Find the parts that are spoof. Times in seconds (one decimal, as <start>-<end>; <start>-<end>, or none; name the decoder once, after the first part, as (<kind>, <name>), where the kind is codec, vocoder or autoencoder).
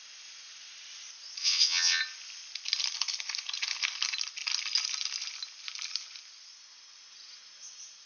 1.4-2.0 (vocoder, WaveNeXt)